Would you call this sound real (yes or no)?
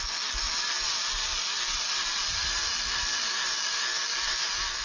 yes